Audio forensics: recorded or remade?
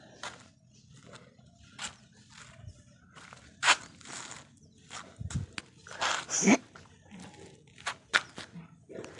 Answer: recorded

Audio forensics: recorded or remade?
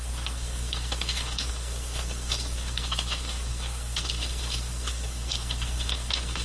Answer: remade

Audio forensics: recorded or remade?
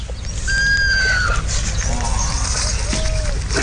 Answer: recorded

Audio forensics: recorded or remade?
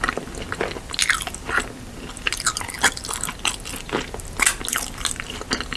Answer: recorded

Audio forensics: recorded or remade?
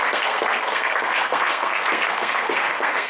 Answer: remade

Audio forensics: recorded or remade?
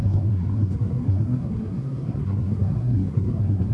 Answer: remade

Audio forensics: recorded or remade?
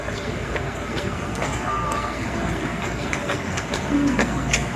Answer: remade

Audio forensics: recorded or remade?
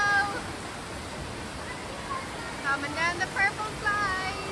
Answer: recorded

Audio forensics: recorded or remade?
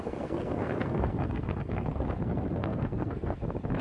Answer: remade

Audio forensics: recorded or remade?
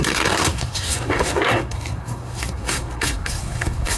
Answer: remade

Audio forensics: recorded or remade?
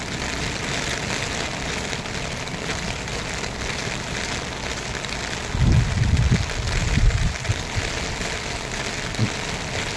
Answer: recorded